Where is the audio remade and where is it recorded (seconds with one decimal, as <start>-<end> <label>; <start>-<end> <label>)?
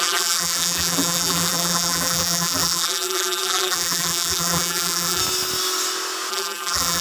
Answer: 0.0-5.2 remade; 5.2-6.3 recorded; 6.3-7.0 remade